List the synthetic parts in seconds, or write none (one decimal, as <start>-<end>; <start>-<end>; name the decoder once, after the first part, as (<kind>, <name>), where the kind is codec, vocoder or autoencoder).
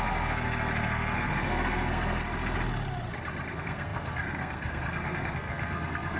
0.0-2.2 (codec, SNAC); 3.5-6.2